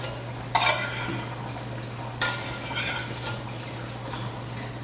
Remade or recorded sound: recorded